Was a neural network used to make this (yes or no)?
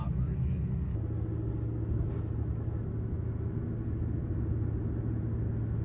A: no